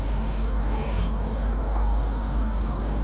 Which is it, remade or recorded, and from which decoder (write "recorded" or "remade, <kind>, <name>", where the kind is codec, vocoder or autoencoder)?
remade, codec, DAC